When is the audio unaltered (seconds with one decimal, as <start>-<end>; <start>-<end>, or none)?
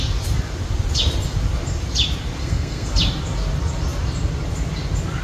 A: 0.0-2.4; 2.9-5.2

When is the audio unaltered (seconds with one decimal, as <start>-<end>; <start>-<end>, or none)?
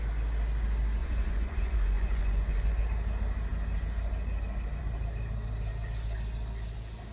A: 0.0-1.0; 2.8-7.1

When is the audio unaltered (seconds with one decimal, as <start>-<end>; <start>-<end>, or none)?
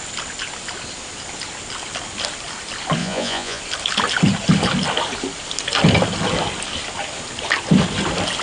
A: 0.0-3.0; 3.6-8.4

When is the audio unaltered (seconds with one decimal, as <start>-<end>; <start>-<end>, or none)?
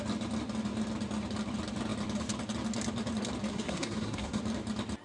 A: 0.0-3.5; 4.4-5.0